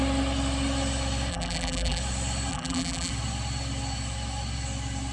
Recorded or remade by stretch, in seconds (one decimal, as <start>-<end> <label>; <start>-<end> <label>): 0.0-1.3 recorded; 1.3-2.0 remade; 2.0-2.5 recorded; 2.5-3.1 remade; 3.1-5.1 recorded